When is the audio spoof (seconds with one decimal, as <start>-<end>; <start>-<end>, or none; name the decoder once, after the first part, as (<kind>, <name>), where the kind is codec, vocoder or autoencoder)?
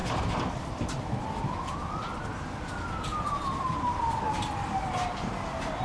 0.0-1.4 (vocoder, BigVGAN v2); 3.1-5.8